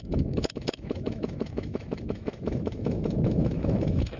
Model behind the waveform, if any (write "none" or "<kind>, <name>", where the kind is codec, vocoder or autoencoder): autoencoder, DAC-VAE